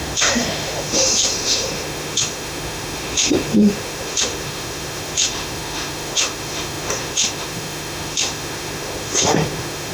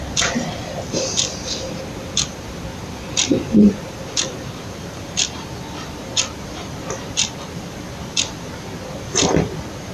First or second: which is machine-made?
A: first